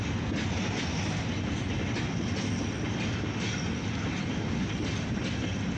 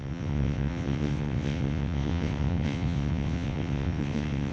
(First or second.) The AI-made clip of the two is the second